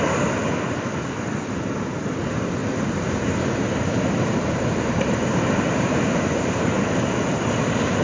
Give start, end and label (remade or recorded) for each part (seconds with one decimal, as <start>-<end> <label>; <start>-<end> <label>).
0.0-2.6 recorded; 2.6-6.9 remade; 6.9-8.0 recorded